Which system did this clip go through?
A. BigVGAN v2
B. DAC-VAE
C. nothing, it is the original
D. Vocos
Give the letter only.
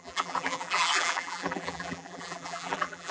A